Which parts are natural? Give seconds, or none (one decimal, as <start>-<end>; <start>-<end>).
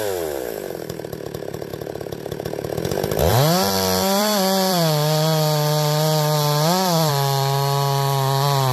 0.0-3.3; 7.1-8.7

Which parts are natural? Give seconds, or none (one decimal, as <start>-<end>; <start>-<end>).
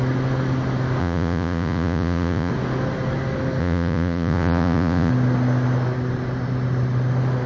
0.0-1.0; 2.5-3.6; 5.1-7.5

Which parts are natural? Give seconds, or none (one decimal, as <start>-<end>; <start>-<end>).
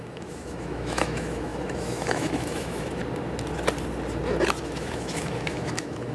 3.0-4.6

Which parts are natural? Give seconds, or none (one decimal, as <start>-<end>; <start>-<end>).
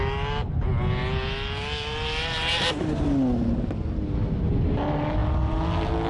0.0-6.1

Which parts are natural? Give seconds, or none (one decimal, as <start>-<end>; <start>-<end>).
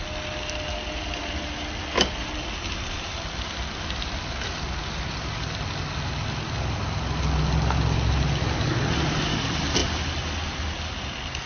0.0-11.5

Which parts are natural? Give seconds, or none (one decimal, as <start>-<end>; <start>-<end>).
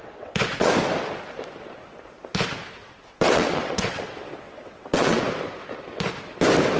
0.7-2.8; 5.2-6.8